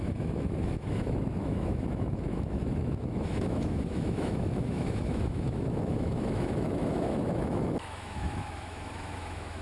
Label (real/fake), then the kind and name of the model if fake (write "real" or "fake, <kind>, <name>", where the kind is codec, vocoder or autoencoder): fake, autoencoder, DAC-VAE